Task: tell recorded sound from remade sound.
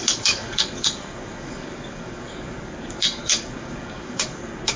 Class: remade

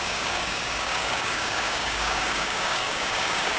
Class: remade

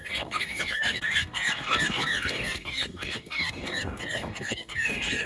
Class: remade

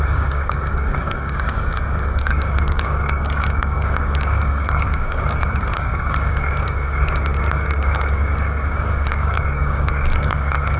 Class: remade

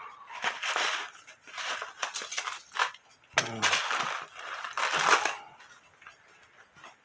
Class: recorded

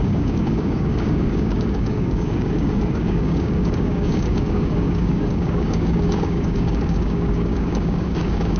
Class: remade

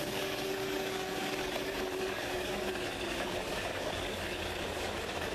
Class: remade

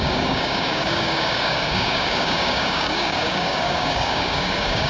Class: remade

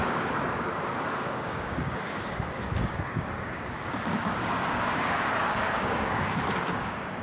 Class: remade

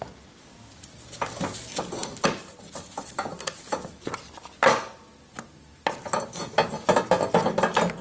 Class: recorded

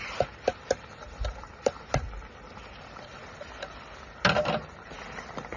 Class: recorded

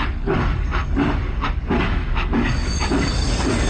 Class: remade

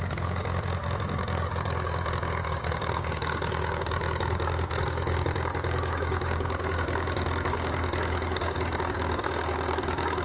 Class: remade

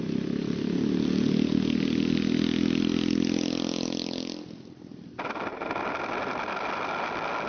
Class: recorded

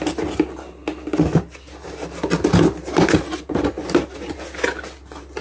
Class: recorded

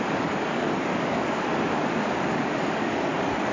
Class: remade